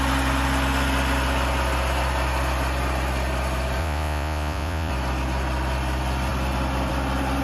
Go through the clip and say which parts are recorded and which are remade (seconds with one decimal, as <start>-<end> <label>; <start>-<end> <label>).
0.0-3.8 recorded; 3.8-4.9 remade; 4.9-7.4 recorded